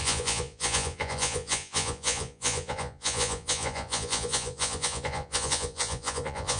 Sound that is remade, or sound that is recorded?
remade